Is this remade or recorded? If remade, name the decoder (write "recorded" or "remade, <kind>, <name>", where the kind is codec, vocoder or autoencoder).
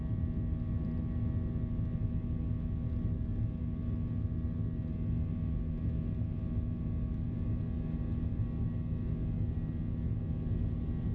recorded